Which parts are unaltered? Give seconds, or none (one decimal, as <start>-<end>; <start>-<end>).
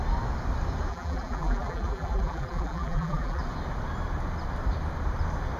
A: 0.0-0.9; 3.4-5.6